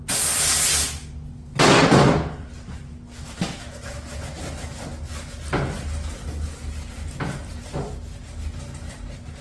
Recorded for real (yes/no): yes